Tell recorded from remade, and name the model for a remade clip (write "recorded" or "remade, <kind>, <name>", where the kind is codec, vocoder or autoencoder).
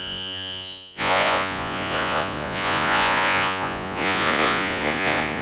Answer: remade, vocoder, Vocos